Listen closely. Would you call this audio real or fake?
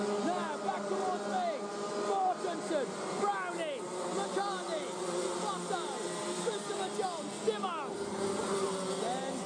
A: real